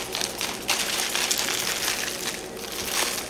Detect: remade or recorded recorded